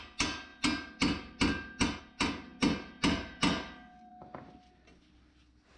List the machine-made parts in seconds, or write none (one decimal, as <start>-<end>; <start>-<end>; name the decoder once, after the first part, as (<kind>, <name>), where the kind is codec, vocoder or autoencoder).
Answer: none